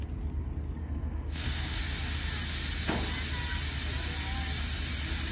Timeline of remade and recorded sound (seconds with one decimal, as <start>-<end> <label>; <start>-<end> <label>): 0.0-0.8 recorded; 0.8-1.8 remade; 1.8-5.3 recorded